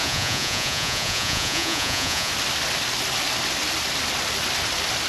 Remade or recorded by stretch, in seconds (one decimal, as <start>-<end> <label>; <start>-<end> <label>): 0.0-2.3 remade; 2.3-5.1 recorded